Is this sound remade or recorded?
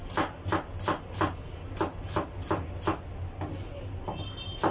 recorded